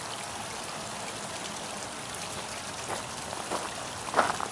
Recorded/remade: recorded